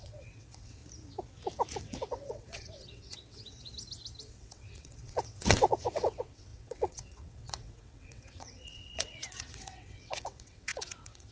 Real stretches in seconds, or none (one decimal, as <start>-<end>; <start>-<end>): 0.8-1.8; 3.7-4.2